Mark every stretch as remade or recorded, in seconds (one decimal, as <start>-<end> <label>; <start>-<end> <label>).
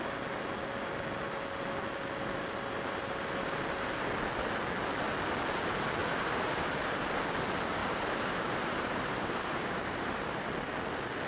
0.0-6.0 recorded; 6.0-6.5 remade; 6.5-7.8 recorded; 7.8-10.4 remade; 10.4-11.3 recorded